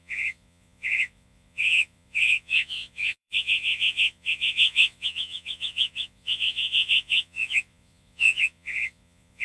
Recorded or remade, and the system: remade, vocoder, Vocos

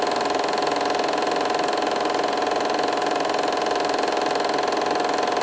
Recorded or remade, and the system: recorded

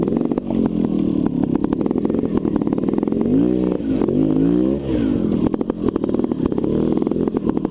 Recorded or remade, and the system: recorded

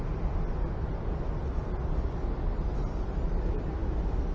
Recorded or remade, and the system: recorded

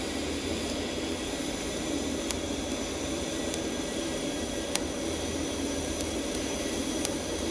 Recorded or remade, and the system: remade, vocoder, BigVGAN v2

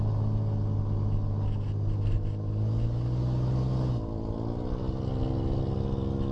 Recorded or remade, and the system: recorded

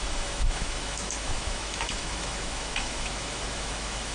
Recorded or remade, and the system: remade, autoencoder, DAC-VAE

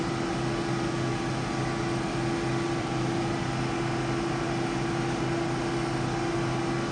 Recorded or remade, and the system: remade, vocoder, BigVGAN v2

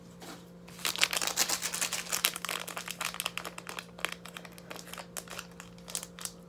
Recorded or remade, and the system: recorded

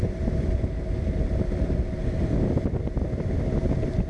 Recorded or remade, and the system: recorded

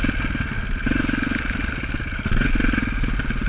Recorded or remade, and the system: recorded